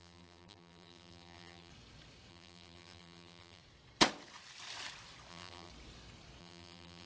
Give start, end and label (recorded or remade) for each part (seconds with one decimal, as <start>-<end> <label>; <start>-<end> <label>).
0.0-1.7 remade; 1.7-2.3 recorded; 2.3-3.6 remade; 3.6-5.3 recorded; 5.3-5.7 remade; 5.7-6.4 recorded; 6.4-7.1 remade